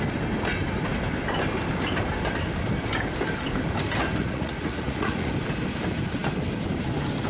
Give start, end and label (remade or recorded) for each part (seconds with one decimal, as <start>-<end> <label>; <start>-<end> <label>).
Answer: 0.0-4.2 recorded; 4.2-5.3 remade; 5.3-7.3 recorded